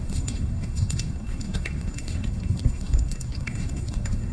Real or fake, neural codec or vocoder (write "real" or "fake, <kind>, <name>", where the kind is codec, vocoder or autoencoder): fake, codec, SNAC